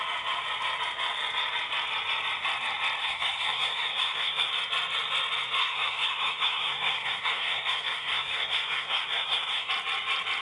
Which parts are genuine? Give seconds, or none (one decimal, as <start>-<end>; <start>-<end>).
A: 0.0-3.0; 4.5-5.6; 9.7-10.4